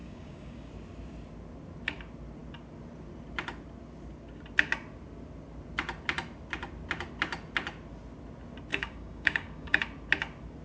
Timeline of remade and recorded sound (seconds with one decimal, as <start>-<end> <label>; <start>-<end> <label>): 0.0-0.7 remade; 0.7-8.7 recorded; 8.7-9.8 remade; 9.8-10.6 recorded